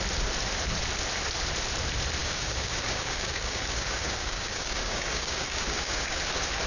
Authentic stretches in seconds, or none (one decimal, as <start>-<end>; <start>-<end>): 0.0-2.2; 6.2-6.7